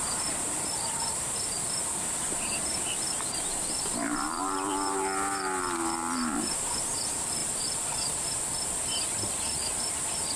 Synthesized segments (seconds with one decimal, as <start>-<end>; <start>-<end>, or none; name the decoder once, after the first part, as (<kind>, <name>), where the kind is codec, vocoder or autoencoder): 0.0-7.4 (vocoder, BigVGAN v2); 9.3-10.4